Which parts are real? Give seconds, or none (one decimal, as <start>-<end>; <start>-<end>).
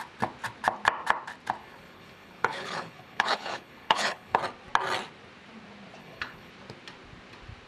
0.0-1.6; 4.4-6.0; 6.5-7.7